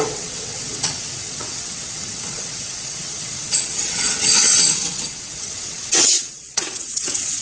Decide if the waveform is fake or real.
fake